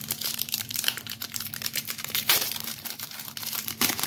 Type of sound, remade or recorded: remade